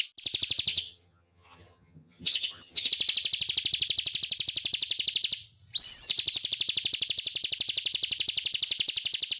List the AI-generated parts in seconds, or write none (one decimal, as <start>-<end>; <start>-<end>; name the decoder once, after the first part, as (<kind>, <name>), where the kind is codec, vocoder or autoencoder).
0.7-2.9 (vocoder, HiFi-GAN)